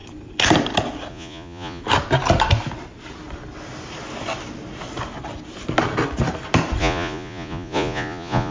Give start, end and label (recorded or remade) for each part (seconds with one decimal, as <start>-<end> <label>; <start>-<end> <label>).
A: 0.0-1.1 recorded; 1.1-1.8 remade; 1.8-6.8 recorded; 6.8-8.5 remade